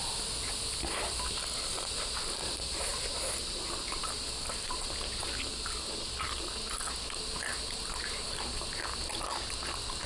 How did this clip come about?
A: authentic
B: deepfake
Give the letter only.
A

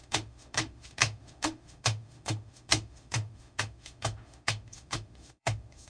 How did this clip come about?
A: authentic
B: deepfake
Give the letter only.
B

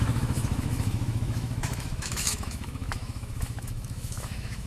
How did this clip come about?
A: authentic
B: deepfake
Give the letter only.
B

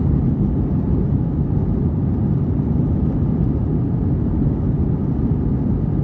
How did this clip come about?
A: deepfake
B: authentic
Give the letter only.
B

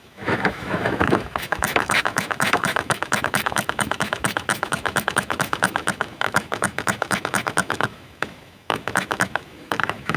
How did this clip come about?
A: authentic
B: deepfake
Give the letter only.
B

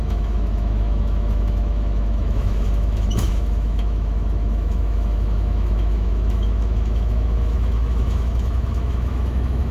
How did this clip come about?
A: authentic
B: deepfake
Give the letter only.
B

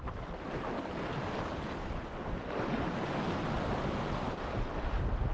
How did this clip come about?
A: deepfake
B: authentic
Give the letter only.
B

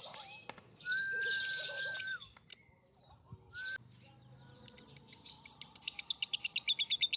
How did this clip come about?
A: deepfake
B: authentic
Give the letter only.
B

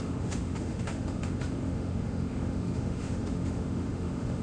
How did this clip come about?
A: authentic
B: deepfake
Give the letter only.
B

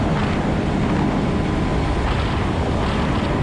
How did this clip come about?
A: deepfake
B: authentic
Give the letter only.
B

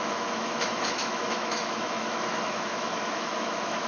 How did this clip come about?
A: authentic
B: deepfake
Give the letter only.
B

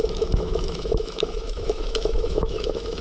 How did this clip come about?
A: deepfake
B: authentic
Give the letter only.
A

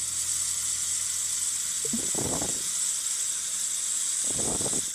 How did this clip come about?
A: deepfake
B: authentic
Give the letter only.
B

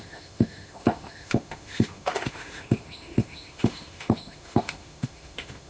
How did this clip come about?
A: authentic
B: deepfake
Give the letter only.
B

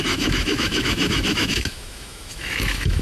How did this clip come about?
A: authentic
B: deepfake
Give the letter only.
B